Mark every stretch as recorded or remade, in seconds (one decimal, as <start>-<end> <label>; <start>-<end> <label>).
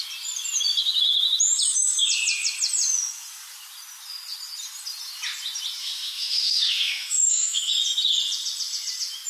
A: 0.0-5.8 recorded; 5.8-7.7 remade; 7.7-9.3 recorded